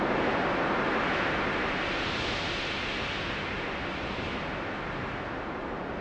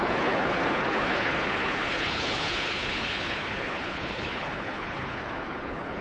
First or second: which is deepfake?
second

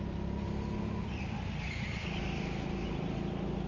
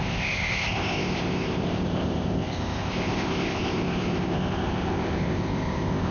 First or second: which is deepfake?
second